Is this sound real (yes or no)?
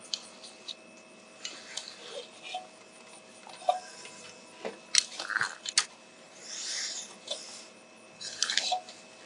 yes